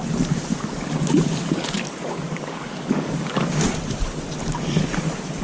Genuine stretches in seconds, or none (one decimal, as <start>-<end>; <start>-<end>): 0.0-0.5; 3.7-4.4; 4.9-5.4